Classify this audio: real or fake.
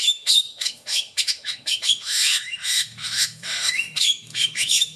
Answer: fake